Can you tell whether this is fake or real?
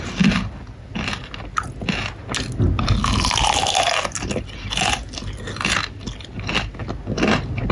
real